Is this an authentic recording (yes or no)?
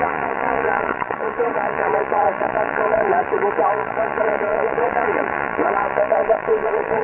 no